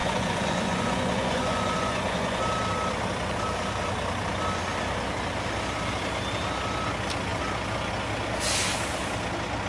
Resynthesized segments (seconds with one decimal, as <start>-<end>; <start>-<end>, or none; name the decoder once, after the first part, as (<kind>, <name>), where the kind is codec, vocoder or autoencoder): 0.0-2.4 (vocoder, Vocos)